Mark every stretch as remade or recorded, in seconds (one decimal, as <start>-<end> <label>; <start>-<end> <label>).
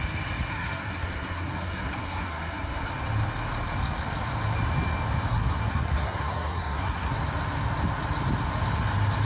0.0-0.5 recorded; 0.5-2.9 remade; 2.9-5.3 recorded; 5.3-7.1 remade; 7.1-9.2 recorded